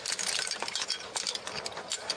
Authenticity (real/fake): real